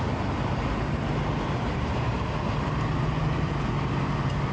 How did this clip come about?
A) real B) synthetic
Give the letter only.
A